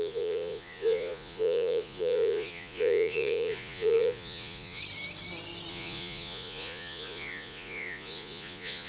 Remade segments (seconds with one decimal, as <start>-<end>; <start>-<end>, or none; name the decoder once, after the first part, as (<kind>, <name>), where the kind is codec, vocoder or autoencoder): 0.0-4.8 (vocoder, Vocos); 5.7-8.9